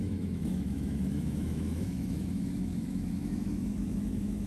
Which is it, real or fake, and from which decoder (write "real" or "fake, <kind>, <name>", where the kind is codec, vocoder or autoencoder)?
fake, autoencoder, DAC-VAE